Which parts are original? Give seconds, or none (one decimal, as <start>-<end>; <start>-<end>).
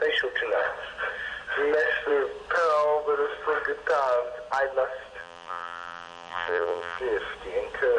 0.0-5.2; 7.0-8.0